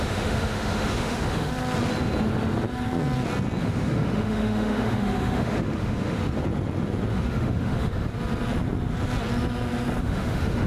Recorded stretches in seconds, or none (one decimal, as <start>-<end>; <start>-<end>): 1.5-3.6; 6.2-7.1; 8.1-10.0